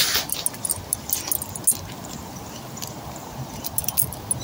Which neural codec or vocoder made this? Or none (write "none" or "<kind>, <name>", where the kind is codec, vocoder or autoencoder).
none